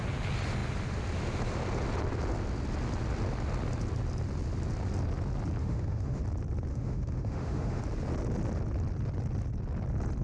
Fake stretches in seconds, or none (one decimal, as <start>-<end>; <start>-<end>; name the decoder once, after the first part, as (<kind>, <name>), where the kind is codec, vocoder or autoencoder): 5.6-6.2 (autoencoder, DAC-VAE); 6.7-7.8